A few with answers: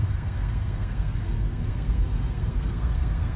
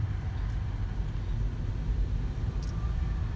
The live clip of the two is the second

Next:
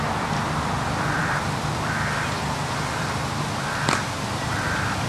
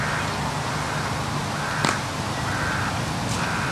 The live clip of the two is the second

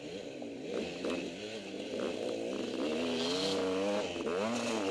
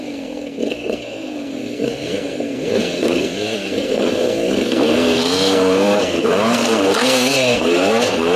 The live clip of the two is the first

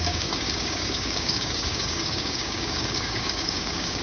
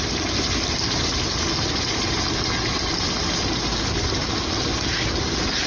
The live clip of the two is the second